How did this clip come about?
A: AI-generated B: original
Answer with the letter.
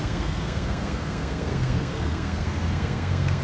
A